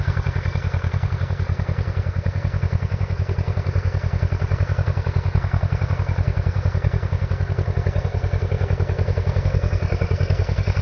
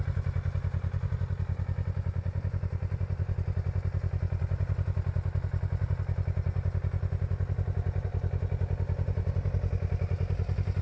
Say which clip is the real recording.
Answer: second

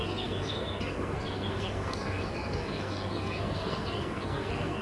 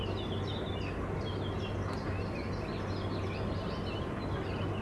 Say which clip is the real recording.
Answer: second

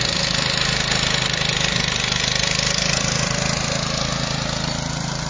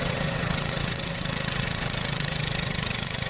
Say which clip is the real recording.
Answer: first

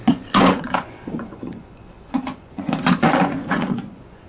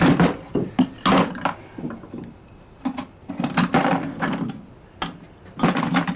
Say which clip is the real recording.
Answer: second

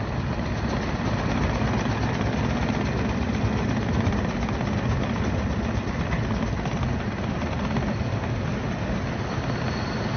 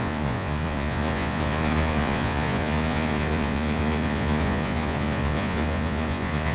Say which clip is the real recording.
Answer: first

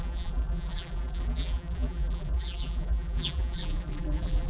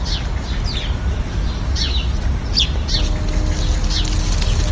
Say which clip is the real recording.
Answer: second